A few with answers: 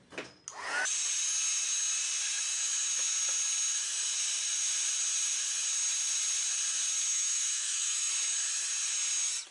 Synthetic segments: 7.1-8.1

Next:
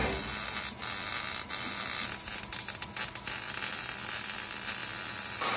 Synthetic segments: none

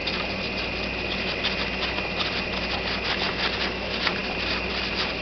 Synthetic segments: none

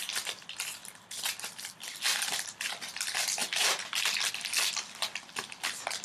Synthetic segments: none